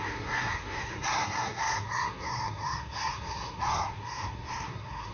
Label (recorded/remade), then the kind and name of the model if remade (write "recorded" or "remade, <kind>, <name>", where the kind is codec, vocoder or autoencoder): remade, codec, SNAC